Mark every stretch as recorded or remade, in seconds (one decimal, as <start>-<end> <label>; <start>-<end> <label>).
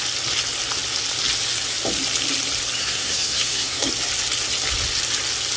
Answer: 0.0-2.8 recorded; 2.8-3.9 remade; 3.9-5.6 recorded